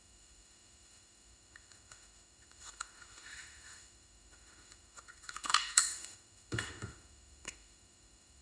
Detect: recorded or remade remade